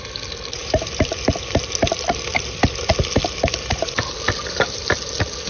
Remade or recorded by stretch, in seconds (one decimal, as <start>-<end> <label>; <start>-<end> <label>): 0.0-5.5 recorded

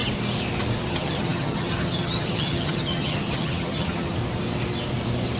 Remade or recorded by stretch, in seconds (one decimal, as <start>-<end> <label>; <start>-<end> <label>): 0.0-0.9 recorded; 0.9-4.2 remade; 4.2-5.4 recorded

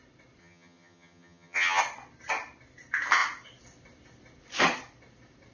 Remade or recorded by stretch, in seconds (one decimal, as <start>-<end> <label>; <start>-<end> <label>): 0.0-0.4 recorded; 0.4-1.8 remade; 1.8-5.5 recorded

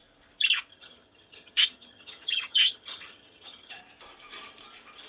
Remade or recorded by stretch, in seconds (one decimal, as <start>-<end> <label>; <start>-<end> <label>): 0.0-0.7 recorded; 0.7-3.8 remade; 3.8-5.1 recorded

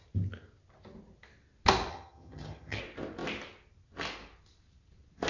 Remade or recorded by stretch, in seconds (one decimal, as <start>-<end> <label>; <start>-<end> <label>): 0.0-1.9 recorded; 1.9-2.8 remade; 2.8-5.3 recorded

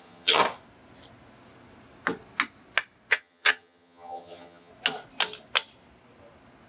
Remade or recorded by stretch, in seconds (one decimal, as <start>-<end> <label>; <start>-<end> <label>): 0.0-0.4 remade; 0.4-3.1 recorded; 3.1-4.7 remade; 4.7-6.7 recorded